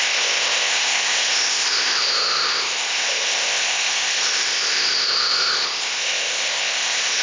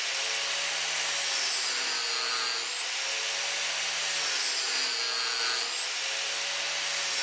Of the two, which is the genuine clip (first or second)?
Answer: second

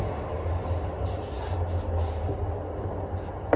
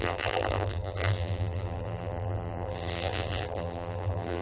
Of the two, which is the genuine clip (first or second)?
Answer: first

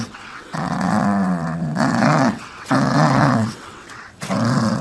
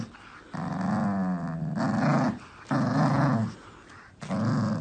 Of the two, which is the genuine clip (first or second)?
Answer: second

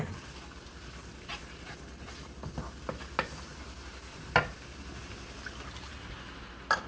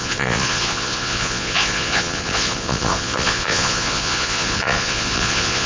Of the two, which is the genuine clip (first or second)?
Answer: first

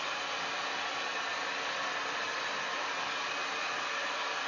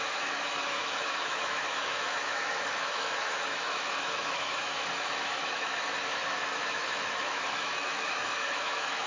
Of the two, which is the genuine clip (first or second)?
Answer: first